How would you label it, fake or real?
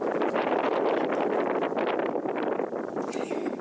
real